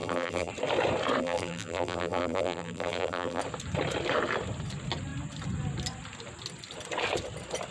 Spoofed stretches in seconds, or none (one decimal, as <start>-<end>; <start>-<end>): 0.0-0.5; 1.2-3.4